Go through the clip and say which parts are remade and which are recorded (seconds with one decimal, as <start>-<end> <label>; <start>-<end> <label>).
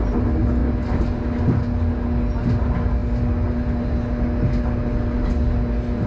0.0-6.1 recorded